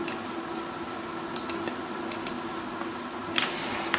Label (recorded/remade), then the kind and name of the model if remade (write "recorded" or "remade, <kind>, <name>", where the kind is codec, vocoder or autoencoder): recorded